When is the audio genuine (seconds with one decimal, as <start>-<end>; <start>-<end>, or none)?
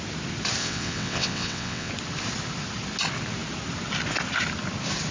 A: 0.0-0.6; 1.9-5.1